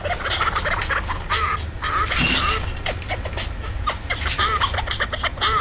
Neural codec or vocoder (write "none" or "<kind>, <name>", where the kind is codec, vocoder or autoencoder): none